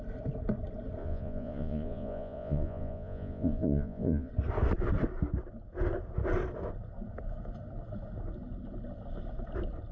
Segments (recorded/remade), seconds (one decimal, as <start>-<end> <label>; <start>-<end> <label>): 0.0-1.0 recorded; 1.0-4.3 remade; 4.3-9.9 recorded